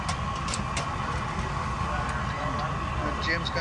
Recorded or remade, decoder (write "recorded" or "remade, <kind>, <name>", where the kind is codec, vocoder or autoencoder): recorded